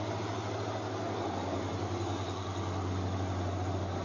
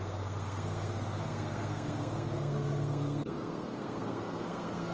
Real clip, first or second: first